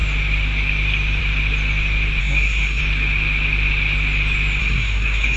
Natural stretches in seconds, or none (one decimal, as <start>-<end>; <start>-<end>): 0.0-2.2; 2.8-4.6